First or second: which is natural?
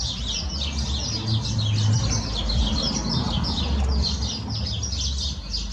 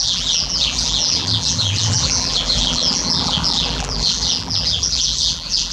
first